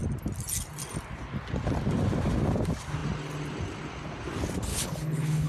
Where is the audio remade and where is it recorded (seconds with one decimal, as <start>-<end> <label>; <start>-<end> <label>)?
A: 0.0-4.7 recorded; 4.7-5.5 remade